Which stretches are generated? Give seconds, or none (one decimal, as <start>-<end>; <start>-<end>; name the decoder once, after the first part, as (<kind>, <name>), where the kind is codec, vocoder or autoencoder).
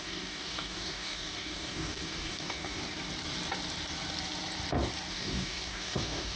0.0-2.8 (codec, DAC); 5.1-6.4